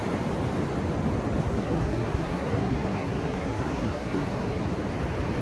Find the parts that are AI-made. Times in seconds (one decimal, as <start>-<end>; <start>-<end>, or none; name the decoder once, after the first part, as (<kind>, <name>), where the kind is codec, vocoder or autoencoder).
1.4-4.6 (codec, SNAC)

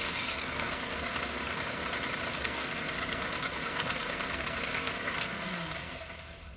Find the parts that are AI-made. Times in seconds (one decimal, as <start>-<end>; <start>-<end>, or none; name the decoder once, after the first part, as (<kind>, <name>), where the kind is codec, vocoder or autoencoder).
0.0-1.8 (codec, SNAC); 2.3-6.6

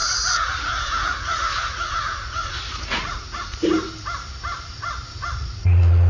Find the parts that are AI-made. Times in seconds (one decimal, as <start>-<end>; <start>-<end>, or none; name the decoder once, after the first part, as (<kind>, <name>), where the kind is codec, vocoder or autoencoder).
0.0-3.6 (vocoder, Vocos); 5.3-6.1

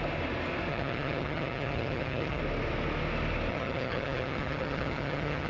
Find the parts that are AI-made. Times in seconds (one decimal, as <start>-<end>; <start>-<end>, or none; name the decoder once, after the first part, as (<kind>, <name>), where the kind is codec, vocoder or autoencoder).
0.7-2.4 (vocoder, HiFi-GAN); 3.5-5.5